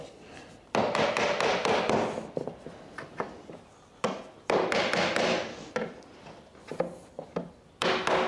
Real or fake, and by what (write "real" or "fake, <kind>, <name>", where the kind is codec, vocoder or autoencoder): real